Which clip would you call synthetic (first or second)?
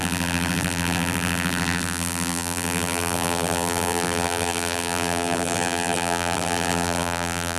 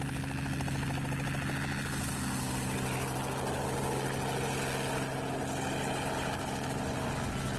first